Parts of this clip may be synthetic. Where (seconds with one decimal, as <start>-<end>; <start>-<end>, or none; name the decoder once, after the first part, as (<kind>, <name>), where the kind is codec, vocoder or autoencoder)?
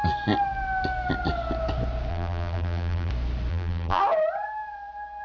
2.1-3.1 (vocoder, BigVGAN v2); 3.5-4.0